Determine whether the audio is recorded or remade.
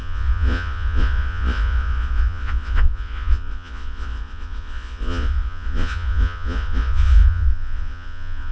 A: remade